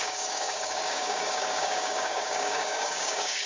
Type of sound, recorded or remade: remade